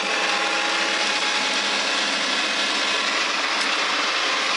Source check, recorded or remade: recorded